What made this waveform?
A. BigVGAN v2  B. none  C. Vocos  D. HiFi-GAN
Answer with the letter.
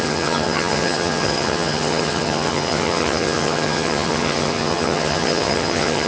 D